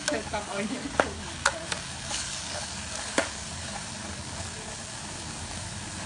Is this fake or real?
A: fake